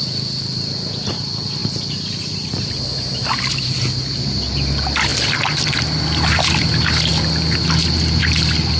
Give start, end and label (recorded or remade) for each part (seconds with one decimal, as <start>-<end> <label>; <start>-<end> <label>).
0.0-8.8 recorded

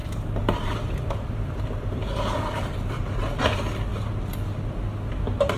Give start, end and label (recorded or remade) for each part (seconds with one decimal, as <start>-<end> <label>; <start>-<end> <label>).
0.0-3.4 remade; 3.4-5.6 recorded

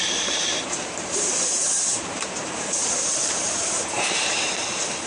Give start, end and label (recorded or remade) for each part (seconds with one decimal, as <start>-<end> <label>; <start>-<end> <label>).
0.0-5.1 remade

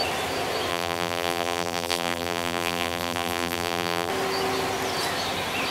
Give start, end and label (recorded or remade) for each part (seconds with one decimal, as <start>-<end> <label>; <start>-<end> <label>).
0.0-0.7 recorded; 0.7-4.1 remade; 4.1-5.7 recorded

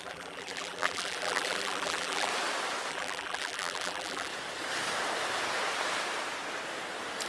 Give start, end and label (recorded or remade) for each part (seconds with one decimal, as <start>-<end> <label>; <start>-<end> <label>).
0.0-2.3 remade; 2.3-2.9 recorded; 2.9-4.3 remade; 4.3-7.3 recorded